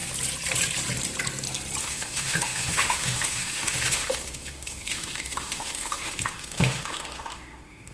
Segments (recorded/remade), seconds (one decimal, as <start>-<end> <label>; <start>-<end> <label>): 0.0-1.8 recorded; 1.8-7.9 remade